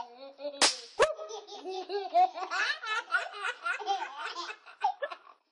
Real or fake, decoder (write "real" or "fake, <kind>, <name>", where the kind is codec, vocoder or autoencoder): real